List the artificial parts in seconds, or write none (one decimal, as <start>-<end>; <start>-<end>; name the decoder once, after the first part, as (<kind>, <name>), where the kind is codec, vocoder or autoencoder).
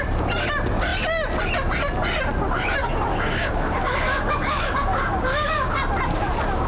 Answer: 3.1-5.7 (codec, DAC)